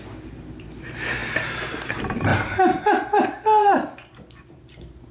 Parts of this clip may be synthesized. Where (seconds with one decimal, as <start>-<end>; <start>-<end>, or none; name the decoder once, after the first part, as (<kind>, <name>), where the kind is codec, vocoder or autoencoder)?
1.2-1.7 (vocoder, BigVGAN v2); 2.3-5.1